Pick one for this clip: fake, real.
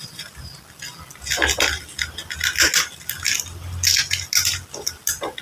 real